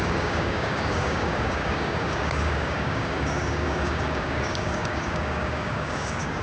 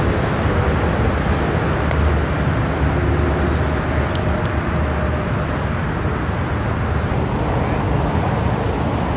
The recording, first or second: second